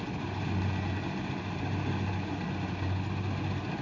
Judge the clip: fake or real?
real